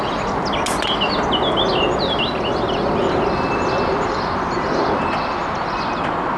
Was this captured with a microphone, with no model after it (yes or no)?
yes